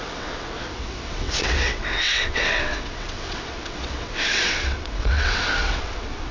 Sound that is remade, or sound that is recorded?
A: remade